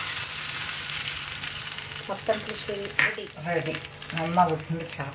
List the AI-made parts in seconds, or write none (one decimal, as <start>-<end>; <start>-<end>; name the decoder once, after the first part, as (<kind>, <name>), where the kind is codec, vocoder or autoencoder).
0.0-2.0 (vocoder, BigVGAN v2)

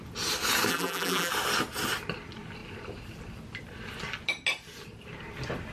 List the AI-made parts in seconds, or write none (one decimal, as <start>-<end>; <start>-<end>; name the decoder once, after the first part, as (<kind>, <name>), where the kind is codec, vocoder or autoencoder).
0.7-1.3 (vocoder, BigVGAN v2)

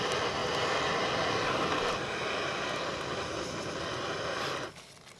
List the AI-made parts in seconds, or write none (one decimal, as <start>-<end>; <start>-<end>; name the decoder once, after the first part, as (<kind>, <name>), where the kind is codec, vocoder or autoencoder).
0.4-0.9 (vocoder, BigVGAN v2)

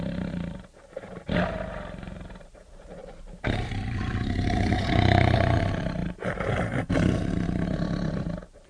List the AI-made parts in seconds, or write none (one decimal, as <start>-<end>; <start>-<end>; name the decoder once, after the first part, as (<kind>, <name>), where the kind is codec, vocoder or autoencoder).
0.0-8.7 (vocoder, BigVGAN v2)

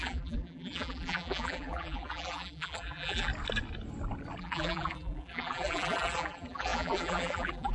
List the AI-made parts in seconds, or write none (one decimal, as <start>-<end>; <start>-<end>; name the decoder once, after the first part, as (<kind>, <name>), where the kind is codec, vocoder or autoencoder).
0.0-3.3 (vocoder, BigVGAN v2); 4.4-7.7

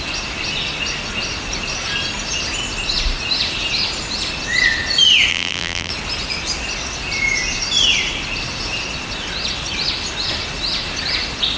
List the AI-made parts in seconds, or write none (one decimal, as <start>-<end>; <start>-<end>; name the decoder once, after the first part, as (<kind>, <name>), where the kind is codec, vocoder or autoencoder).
5.3-5.9 (vocoder, BigVGAN v2)

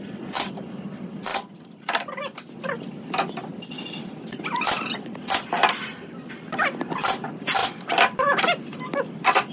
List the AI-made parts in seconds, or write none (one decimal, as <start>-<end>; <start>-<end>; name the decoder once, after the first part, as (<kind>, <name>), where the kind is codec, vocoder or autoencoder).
1.3-2.5 (vocoder, BigVGAN v2); 3.5-4.1

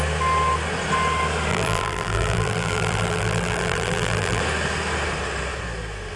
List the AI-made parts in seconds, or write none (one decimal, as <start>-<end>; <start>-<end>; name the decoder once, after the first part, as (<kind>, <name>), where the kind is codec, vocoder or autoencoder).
1.5-4.4 (vocoder, BigVGAN v2)